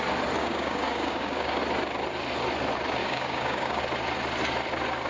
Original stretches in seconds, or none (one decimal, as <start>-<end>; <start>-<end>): 0.0-0.4; 1.6-3.0; 3.8-5.1